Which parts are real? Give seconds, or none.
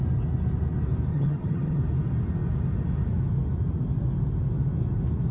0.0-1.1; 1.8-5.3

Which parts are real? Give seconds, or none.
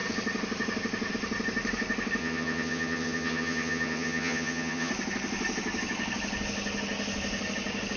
0.0-2.2; 4.9-8.0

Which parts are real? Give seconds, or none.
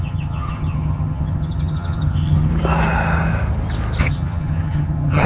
2.5-4.0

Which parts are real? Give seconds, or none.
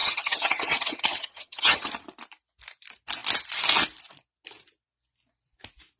1.9-6.0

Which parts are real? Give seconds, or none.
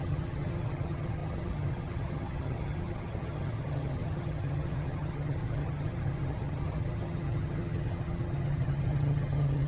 none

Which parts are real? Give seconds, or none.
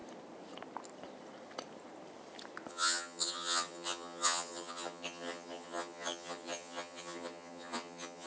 0.0-2.7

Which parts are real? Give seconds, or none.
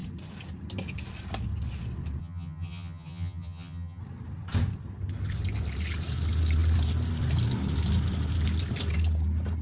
0.0-2.2; 4.0-9.6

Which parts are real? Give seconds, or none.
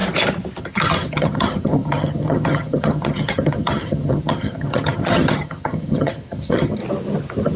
0.0-0.6; 6.8-7.6